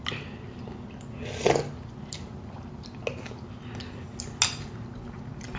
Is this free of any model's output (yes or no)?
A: yes